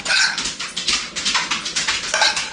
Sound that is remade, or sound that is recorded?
recorded